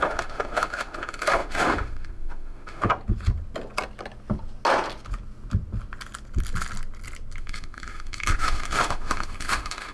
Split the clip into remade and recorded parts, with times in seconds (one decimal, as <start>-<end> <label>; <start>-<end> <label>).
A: 0.0-2.9 remade; 2.9-7.4 recorded; 7.4-9.9 remade